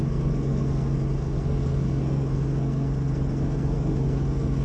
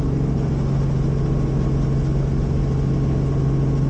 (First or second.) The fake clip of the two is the first